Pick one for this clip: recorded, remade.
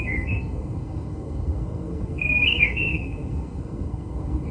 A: remade